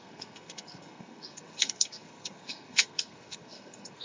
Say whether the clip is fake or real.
fake